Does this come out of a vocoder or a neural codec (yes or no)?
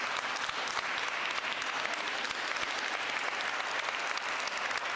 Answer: no